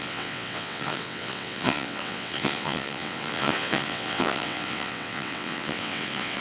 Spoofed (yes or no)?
yes